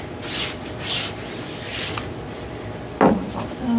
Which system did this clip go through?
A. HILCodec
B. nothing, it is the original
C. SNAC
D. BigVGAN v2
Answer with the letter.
B